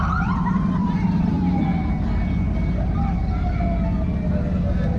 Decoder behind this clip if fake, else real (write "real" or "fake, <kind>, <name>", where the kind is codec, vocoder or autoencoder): real